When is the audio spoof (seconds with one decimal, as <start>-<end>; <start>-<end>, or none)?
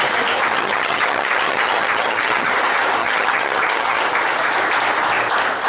0.5-2.5; 3.0-4.0